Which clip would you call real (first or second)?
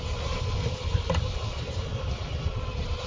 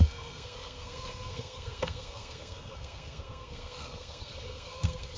first